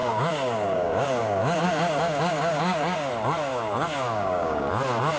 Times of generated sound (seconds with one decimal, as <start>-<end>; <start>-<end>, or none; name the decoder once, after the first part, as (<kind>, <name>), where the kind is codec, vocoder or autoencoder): 0.0-3.1 (codec, DAC); 3.5-4.7